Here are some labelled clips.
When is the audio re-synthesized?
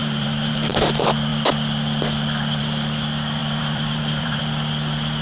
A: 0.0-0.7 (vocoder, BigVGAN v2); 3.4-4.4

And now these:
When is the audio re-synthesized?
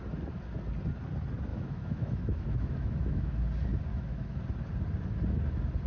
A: 1.5-3.4 (autoencoder, DAC-VAE); 3.9-4.4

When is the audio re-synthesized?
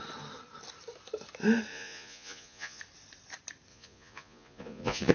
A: 1.7-2.8 (vocoder, Vocos); 3.7-5.1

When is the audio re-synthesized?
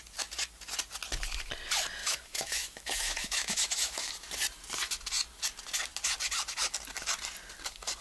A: 2.0-4.1 (autoencoder, DAC-VAE)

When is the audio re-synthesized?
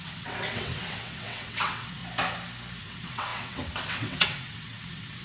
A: 0.0-2.0 (vocoder, WaveNeXt); 2.8-5.2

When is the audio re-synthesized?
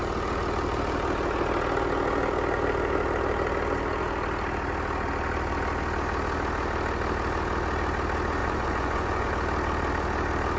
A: 8.4-9.3 (vocoder, Vocos)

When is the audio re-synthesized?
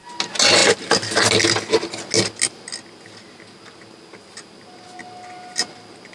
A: none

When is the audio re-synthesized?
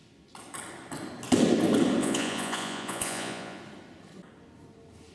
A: 2.0-3.6 (vocoder, Vocos)